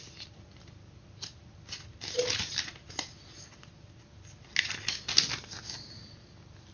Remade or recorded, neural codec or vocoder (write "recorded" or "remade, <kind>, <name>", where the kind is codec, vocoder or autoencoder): recorded